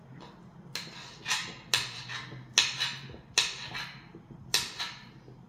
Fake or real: real